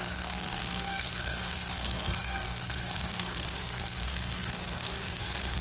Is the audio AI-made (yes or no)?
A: yes